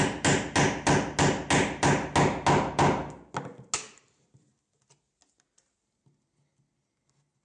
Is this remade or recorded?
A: recorded